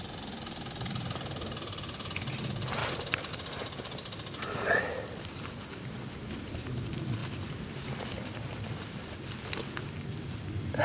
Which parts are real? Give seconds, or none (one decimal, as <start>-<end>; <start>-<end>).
0.0-2.8; 3.3-7.2; 9.6-10.8